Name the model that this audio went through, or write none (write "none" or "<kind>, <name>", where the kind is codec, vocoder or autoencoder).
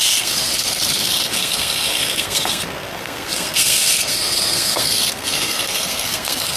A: codec, SNAC